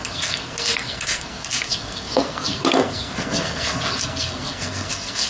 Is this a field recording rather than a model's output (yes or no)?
no